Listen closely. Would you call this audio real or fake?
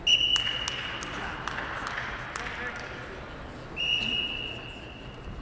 real